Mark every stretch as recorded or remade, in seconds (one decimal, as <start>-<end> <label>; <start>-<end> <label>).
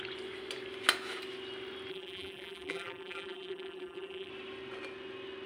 0.0-1.9 recorded; 1.9-4.3 remade; 4.3-5.5 recorded